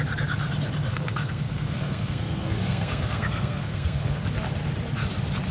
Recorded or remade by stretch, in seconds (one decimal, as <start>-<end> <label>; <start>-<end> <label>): 0.0-0.9 recorded; 0.9-4.2 remade; 4.2-5.5 recorded